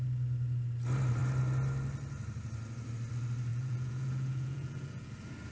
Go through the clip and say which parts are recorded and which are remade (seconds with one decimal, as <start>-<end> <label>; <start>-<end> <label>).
0.0-3.5 recorded; 3.5-5.1 remade; 5.1-5.5 recorded